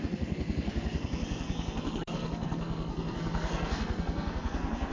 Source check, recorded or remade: remade